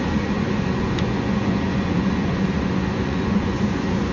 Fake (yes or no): yes